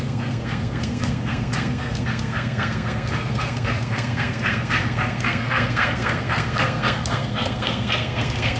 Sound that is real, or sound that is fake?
fake